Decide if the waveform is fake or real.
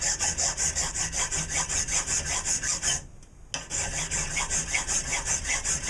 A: real